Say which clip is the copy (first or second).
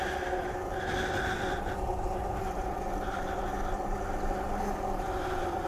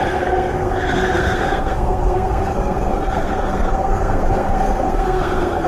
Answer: second